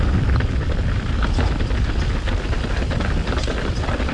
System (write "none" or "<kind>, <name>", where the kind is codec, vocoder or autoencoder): none